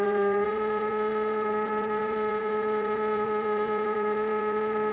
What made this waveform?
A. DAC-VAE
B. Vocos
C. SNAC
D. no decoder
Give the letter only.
B